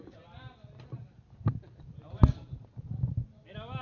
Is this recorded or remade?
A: recorded